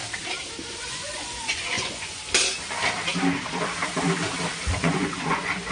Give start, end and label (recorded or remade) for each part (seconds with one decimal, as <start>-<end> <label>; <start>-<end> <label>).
0.0-0.8 recorded; 0.8-2.2 remade; 2.2-4.7 recorded; 4.7-5.7 remade